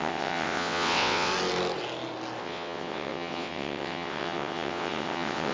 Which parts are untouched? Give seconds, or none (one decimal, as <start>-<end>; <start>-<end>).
1.3-2.4